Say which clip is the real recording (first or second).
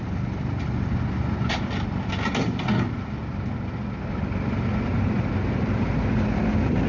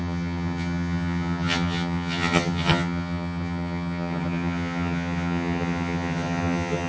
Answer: first